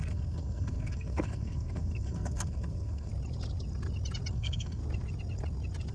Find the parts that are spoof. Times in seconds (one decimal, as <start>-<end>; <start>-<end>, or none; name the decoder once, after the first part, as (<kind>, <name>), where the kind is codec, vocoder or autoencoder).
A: 0.0-3.1 (codec, SNAC); 4.3-4.8